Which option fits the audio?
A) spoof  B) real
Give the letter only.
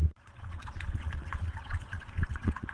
A